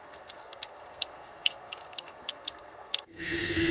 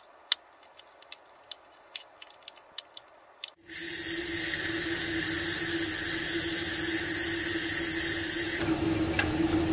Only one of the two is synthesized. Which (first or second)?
first